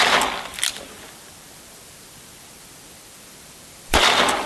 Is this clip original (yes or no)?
no